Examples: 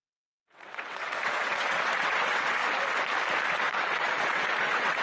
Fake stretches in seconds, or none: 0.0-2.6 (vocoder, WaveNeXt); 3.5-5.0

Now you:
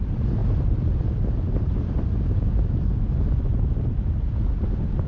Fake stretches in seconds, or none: none

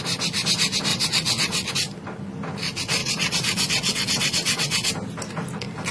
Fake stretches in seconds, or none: 0.9-1.7 (vocoder, WaveNeXt); 3.0-4.9

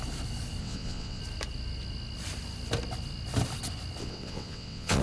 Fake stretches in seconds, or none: 0.6-1.2 (vocoder, WaveNeXt); 4.0-5.0

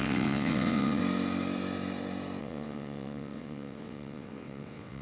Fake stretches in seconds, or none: 0.0-1.0 (vocoder, WaveNeXt); 2.4-5.0